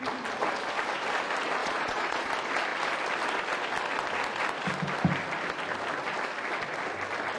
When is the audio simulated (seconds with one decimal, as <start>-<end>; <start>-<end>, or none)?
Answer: 1.6-2.3